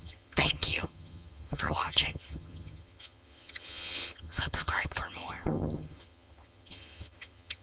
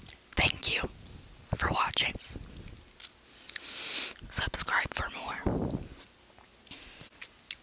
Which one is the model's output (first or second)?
first